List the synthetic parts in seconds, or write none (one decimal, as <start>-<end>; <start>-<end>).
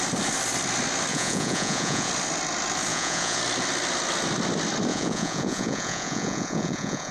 1.1-2.1; 2.9-3.4; 4.9-7.1